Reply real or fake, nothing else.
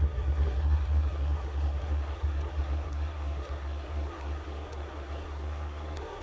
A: fake